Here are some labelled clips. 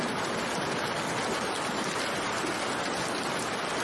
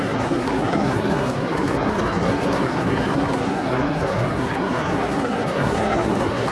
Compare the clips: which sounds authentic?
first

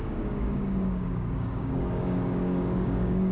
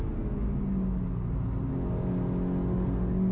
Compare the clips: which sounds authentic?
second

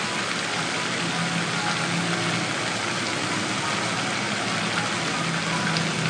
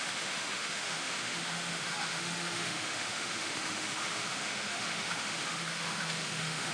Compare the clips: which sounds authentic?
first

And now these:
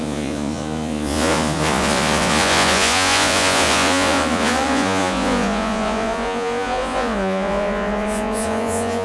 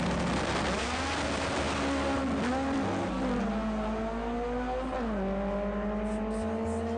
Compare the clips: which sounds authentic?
second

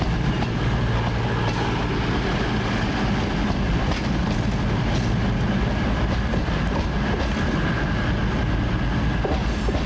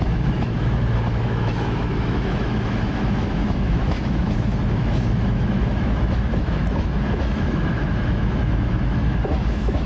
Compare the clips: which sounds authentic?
first